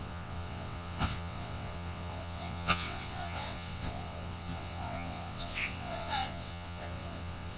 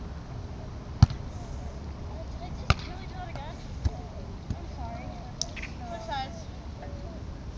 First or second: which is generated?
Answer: first